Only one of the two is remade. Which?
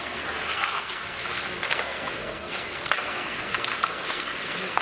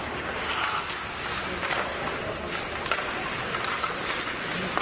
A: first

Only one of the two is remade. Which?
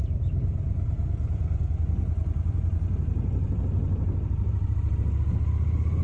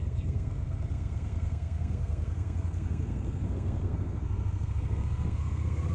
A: second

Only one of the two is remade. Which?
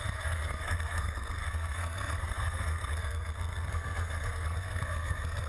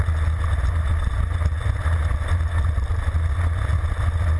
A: first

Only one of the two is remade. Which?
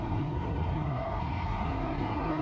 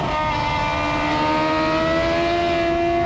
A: first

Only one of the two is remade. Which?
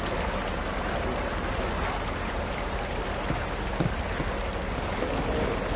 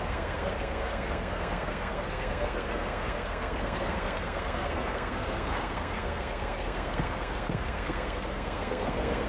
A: second